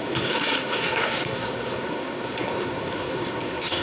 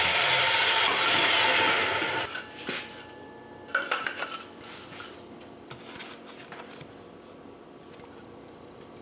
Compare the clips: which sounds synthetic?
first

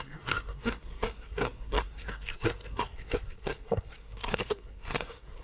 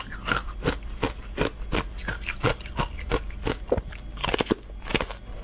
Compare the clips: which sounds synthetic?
first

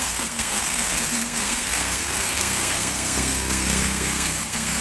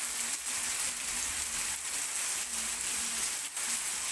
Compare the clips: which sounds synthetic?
first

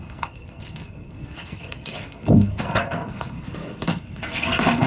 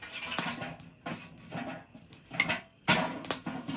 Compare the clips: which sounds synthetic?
first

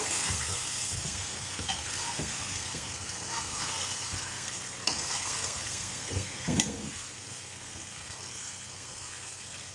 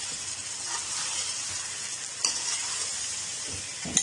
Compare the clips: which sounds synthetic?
first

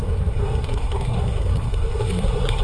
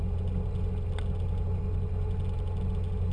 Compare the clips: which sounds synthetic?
first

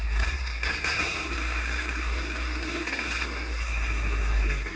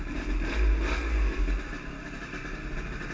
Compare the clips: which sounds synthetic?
first